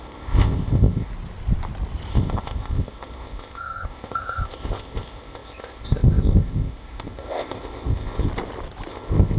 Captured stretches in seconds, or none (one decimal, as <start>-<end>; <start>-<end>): 1.1-2.1; 8.3-8.9